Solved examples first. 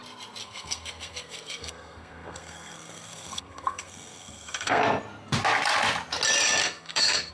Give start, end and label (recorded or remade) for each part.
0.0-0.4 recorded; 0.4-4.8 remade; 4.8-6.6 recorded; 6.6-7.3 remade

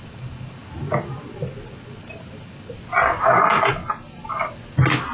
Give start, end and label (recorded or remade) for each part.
0.0-5.1 recorded

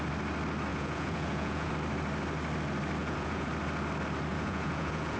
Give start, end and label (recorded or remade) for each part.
0.0-0.7 recorded; 0.7-1.7 remade; 1.7-3.0 recorded; 3.0-3.5 remade; 3.5-4.3 recorded; 4.3-5.2 remade

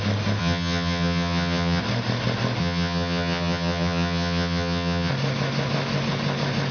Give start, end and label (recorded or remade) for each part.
0.0-0.4 recorded; 0.4-1.8 remade; 1.8-2.6 recorded; 2.6-5.1 remade; 5.1-6.7 recorded

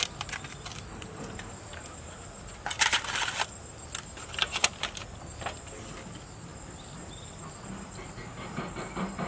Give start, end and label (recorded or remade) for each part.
0.0-9.3 recorded

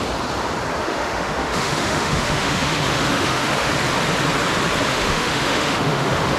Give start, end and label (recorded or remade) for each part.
0.0-0.8 recorded; 0.8-3.7 remade; 3.7-4.9 recorded; 4.9-6.4 remade